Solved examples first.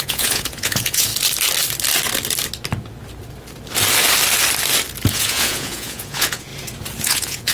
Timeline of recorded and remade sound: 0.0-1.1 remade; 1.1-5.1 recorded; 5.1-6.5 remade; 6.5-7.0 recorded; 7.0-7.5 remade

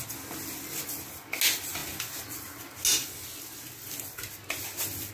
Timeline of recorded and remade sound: 0.0-5.1 recorded

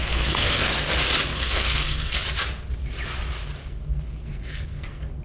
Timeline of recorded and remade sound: 0.0-0.7 remade; 0.7-1.3 recorded; 1.3-2.2 remade; 2.2-3.6 recorded; 3.6-5.2 remade

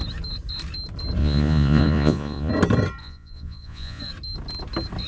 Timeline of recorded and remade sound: 0.0-1.2 recorded; 1.2-2.5 remade; 2.5-3.0 recorded; 3.0-4.0 remade; 4.0-5.1 recorded

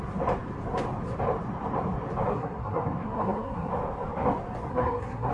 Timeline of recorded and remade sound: 0.0-2.3 recorded; 2.3-3.7 remade; 3.7-4.7 recorded; 4.7-5.3 remade

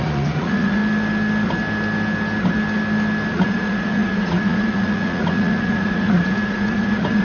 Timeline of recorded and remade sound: 0.0-0.8 remade; 0.8-3.3 recorded; 3.3-7.2 remade